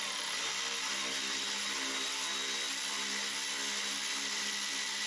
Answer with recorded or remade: recorded